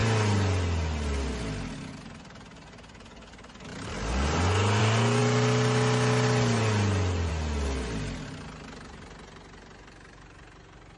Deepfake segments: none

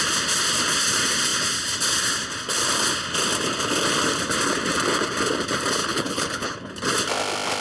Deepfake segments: 5.8-6.7

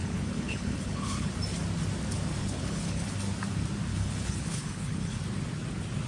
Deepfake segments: 0.0-1.3; 2.4-3.1; 3.9-5.2

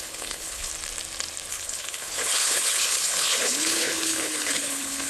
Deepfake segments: 0.0-0.7; 1.5-5.1

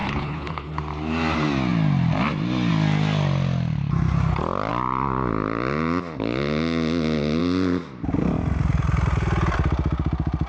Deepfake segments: 0.0-0.8

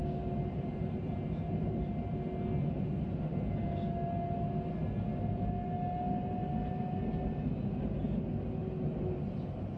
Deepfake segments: none

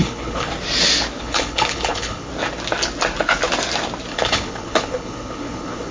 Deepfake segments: 0.0-0.5; 1.2-2.3; 4.1-5.9

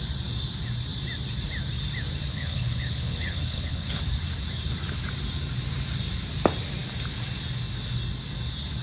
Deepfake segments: 2.3-4.0